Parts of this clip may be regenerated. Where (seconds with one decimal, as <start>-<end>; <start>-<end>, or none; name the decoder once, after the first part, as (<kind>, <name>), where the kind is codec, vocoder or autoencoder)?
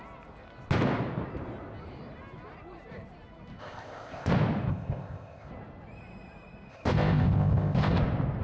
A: 3.6-4.3 (codec, ZipCodec); 4.7-5.5; 6.7-8.0